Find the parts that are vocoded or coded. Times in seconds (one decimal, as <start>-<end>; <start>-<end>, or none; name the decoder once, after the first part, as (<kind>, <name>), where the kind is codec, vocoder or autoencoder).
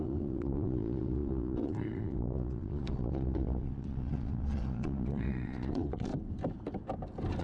0.0-6.1 (vocoder, Vocos)